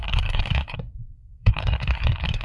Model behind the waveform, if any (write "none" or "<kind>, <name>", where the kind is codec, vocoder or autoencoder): codec, SNAC